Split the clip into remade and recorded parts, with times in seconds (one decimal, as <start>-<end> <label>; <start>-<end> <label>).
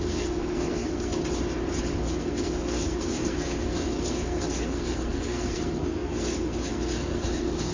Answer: 0.0-1.2 remade; 1.2-2.0 recorded; 2.0-7.7 remade